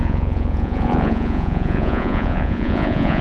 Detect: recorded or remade remade